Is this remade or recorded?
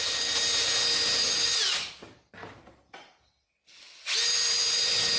recorded